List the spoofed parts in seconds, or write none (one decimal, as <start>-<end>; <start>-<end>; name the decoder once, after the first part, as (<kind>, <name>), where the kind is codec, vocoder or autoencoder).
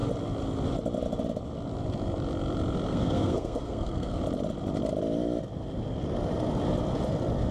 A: 2.9-4.2 (codec, SNAC)